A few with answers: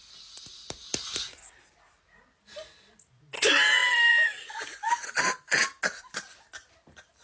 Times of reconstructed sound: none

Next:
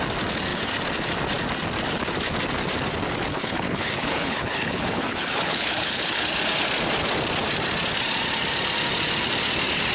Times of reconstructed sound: 3.3-6.3

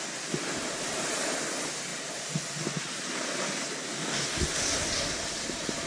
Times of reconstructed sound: 3.9-4.4

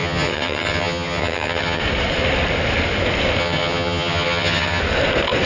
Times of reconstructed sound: 0.0-1.8; 3.4-4.8

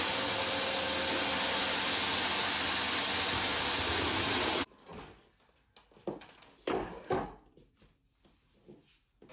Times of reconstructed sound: none

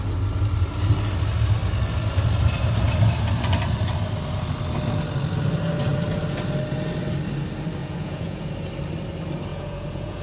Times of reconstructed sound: 7.8-8.5; 9.5-10.2